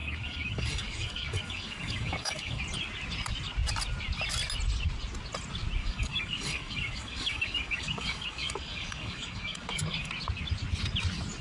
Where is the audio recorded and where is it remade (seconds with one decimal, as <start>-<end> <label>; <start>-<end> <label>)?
0.0-2.6 remade; 2.6-5.8 recorded; 5.8-10.1 remade; 10.1-11.4 recorded